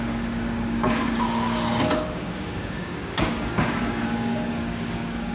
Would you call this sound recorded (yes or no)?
no